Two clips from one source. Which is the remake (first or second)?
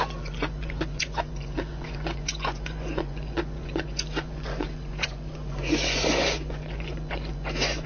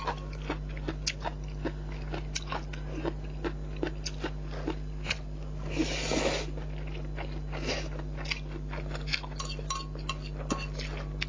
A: first